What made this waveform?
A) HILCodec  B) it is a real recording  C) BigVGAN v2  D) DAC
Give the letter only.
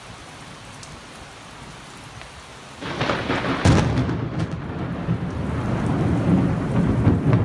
B